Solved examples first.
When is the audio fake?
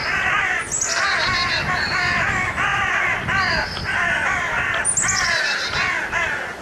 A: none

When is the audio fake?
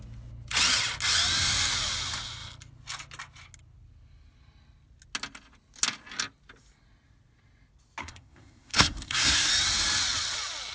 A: 8.0-9.5 (codec, SNAC)